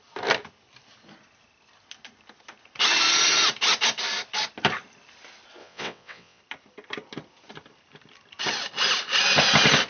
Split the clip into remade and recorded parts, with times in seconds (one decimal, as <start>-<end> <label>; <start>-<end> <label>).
0.0-5.6 recorded; 5.6-6.4 remade; 6.4-9.9 recorded